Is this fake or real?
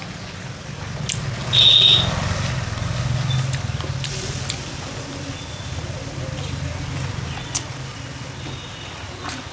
real